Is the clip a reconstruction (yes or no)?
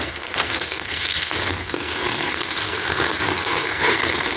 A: yes